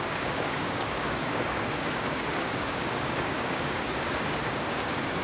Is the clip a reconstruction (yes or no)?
yes